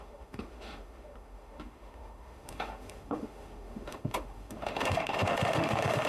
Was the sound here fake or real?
fake